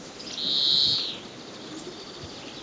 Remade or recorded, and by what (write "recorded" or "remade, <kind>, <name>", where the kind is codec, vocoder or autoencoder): recorded